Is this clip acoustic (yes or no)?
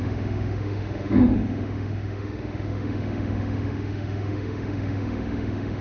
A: no